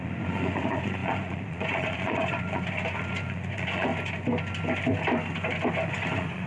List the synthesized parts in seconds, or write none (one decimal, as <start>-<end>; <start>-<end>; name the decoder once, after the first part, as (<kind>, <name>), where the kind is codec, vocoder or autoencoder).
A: 0.0-3.9 (vocoder, Vocos); 5.9-6.5